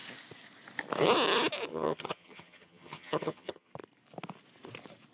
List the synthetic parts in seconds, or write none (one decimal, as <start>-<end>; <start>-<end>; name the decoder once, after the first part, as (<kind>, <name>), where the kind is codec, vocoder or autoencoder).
1.7-3.7 (vocoder, HiFi-GAN)